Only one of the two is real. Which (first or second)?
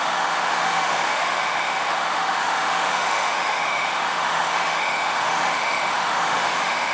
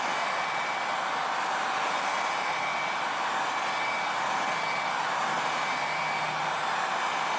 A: second